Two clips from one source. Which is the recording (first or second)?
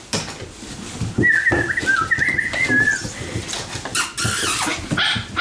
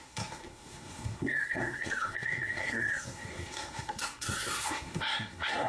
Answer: first